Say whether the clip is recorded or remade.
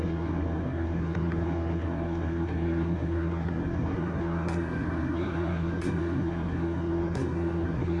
remade